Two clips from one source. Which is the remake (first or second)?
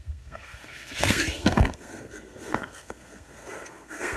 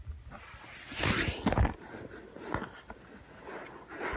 first